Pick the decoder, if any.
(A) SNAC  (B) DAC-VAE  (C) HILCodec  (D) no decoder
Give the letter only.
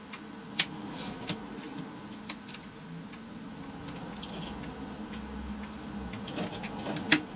D